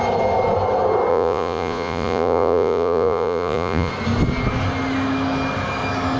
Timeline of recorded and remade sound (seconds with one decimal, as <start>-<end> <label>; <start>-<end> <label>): 0.0-1.1 recorded; 1.1-3.9 remade; 3.9-6.2 recorded